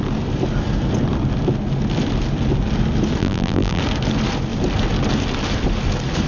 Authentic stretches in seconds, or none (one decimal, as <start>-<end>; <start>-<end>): 0.0-3.2; 3.8-6.3